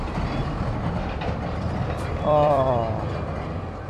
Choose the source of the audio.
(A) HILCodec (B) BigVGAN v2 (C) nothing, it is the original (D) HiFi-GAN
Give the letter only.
B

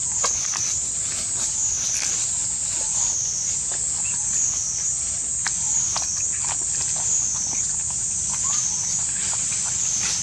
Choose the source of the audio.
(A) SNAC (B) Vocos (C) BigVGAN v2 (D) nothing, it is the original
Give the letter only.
D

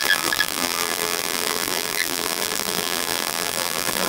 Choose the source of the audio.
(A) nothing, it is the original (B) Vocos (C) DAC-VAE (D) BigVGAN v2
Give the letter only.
D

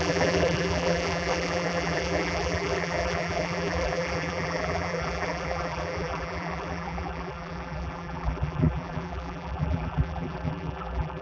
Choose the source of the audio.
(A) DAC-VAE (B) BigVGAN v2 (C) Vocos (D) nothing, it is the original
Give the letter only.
B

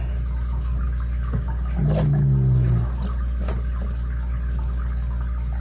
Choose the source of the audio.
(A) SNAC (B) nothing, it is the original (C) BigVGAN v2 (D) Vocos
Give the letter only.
B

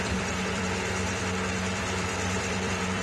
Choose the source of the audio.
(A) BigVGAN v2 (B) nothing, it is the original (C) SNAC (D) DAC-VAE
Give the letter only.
A